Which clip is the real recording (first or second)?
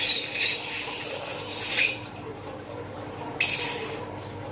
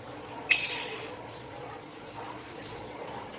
first